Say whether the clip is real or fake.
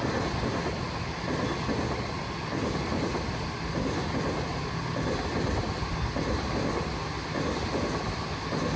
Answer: real